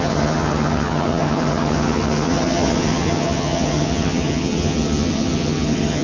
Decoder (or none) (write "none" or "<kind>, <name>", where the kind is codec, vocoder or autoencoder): vocoder, HiFi-GAN